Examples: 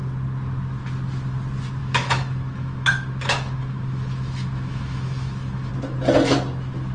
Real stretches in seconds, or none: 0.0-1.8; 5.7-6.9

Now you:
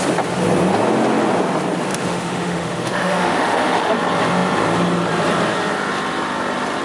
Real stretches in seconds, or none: 0.0-1.9; 3.9-6.8